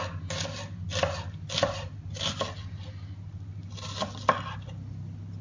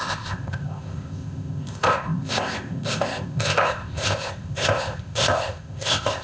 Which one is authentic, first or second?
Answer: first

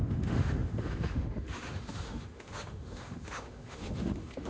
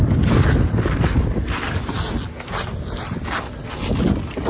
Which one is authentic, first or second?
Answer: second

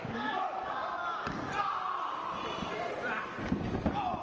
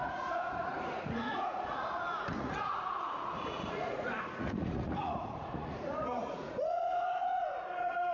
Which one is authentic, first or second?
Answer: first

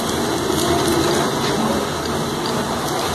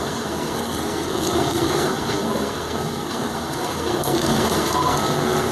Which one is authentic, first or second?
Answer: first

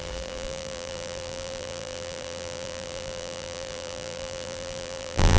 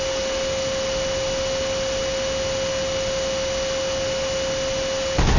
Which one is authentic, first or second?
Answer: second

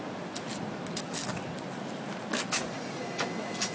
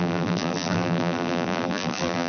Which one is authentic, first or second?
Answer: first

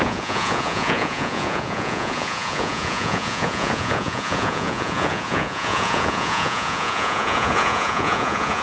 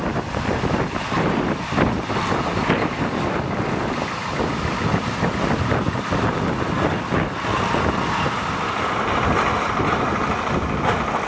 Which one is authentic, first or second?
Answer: second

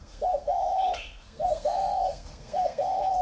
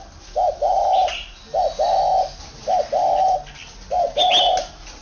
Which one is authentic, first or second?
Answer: second